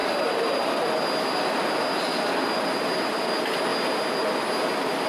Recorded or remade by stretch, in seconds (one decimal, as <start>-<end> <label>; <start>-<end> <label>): 0.0-5.1 recorded